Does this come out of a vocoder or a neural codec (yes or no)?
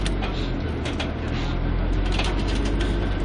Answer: no